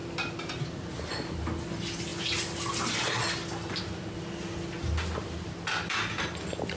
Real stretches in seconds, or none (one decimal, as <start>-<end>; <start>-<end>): 0.0-6.8